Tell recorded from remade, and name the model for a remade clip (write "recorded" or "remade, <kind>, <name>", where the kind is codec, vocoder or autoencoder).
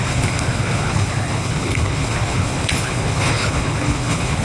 remade, codec, HILCodec